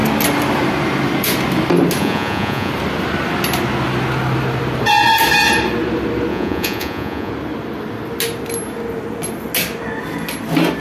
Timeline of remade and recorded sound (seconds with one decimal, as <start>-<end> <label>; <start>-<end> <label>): 0.0-2.0 recorded; 2.0-2.7 remade; 2.7-6.3 recorded; 6.3-7.3 remade; 7.3-10.8 recorded